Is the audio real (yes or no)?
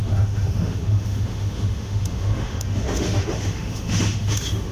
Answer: no